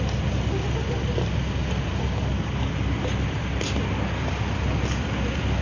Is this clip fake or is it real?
real